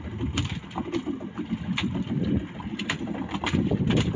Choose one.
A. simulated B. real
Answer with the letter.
A